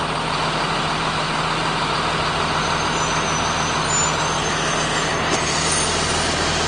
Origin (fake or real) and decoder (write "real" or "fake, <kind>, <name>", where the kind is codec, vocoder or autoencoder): real